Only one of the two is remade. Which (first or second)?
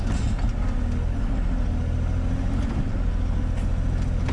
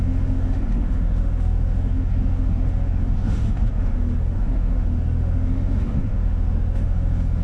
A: second